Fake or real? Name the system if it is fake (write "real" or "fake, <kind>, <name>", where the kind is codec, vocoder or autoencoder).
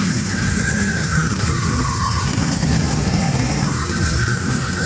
fake, codec, SNAC